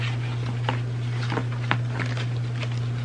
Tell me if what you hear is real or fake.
real